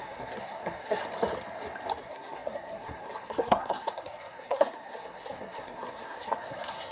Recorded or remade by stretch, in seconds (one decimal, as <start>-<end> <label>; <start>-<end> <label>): 0.0-1.0 remade; 1.0-2.0 recorded; 2.0-6.9 remade